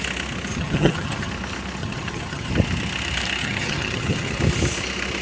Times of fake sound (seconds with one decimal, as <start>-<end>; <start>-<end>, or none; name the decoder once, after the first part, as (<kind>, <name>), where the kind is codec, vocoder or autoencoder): 0.5-1.3 (vocoder, HiFi-GAN); 1.8-2.5; 3.4-4.4